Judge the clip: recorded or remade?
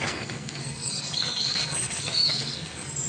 remade